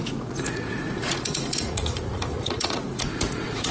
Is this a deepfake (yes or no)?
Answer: yes